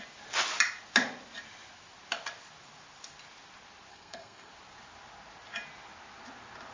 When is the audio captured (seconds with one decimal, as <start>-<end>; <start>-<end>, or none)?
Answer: 0.0-3.9; 4.5-6.7